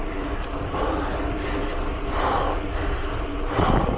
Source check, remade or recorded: remade